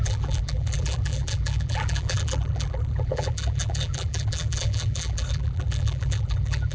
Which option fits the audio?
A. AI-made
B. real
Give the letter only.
A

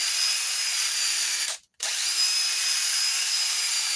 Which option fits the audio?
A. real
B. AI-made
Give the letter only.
B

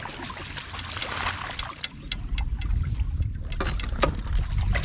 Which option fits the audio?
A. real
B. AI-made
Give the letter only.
A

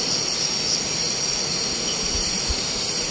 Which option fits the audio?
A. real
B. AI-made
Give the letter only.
A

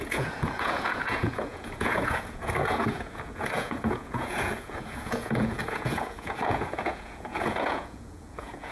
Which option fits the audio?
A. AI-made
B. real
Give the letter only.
A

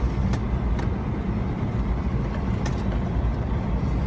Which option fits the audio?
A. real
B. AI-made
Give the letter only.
A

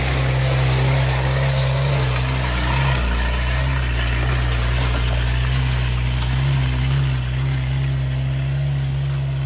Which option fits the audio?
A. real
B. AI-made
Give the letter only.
A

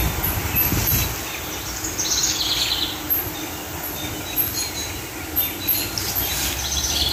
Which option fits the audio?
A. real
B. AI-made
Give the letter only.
A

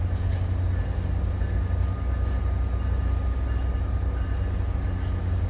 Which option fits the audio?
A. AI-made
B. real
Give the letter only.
B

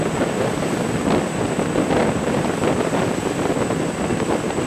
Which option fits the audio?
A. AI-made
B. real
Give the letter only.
B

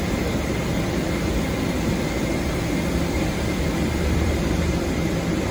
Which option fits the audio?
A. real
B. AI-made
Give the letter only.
B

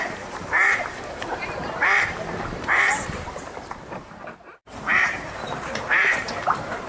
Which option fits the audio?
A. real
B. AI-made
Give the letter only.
B